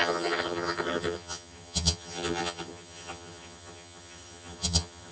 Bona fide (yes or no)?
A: no